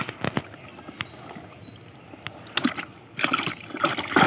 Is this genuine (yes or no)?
yes